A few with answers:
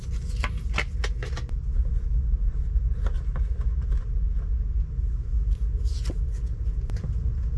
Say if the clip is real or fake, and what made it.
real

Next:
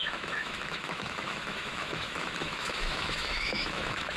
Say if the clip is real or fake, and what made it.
fake, autoencoder, DAC-VAE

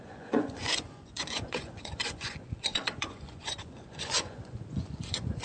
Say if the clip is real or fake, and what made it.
fake, vocoder, Vocos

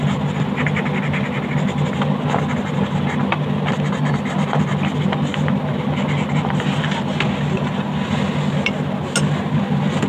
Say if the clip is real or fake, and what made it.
real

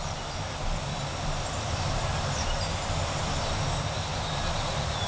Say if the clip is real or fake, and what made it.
real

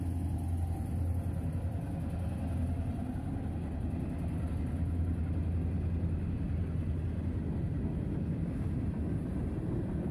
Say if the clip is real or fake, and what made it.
real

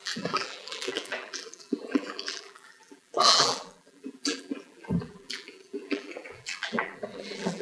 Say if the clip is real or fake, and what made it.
fake, vocoder, BigVGAN v2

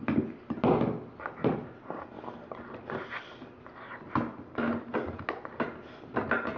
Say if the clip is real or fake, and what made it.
real